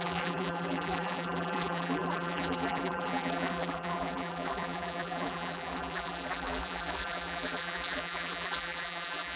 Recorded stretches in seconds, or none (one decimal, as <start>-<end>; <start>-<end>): none